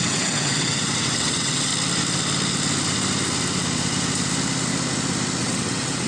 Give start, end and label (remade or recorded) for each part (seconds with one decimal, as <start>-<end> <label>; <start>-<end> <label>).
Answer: 0.0-1.7 remade; 1.7-5.4 recorded; 5.4-6.1 remade